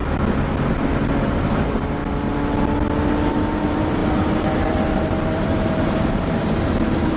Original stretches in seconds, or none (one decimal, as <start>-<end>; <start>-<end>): 0.0-0.7; 2.0-3.3